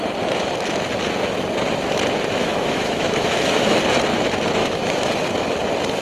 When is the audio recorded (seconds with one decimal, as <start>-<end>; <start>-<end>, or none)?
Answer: 0.0-2.4; 3.8-4.6; 5.1-6.0